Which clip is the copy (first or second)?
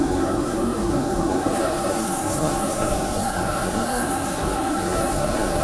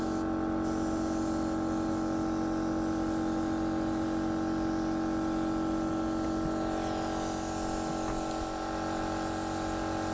first